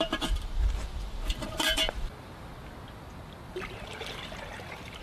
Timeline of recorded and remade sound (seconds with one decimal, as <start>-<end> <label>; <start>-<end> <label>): 0.0-2.5 remade; 2.5-3.5 recorded; 3.5-5.0 remade